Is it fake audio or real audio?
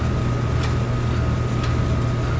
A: real